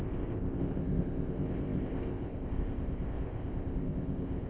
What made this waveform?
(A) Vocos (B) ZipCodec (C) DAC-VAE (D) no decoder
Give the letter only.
B